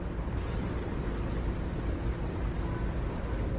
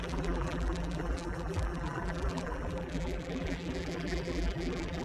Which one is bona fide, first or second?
first